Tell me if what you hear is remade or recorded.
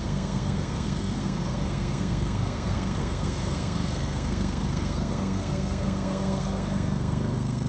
remade